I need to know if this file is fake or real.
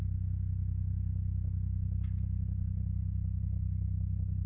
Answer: real